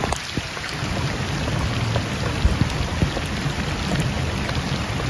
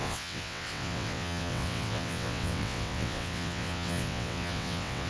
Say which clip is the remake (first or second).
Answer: second